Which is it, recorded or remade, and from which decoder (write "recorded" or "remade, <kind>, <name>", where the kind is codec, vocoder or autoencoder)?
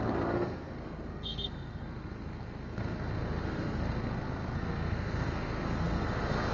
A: remade, codec, SNAC